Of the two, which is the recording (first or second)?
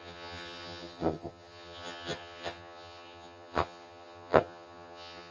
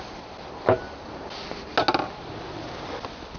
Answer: second